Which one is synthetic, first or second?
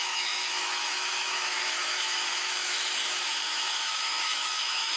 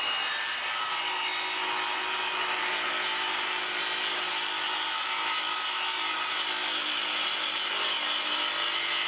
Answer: first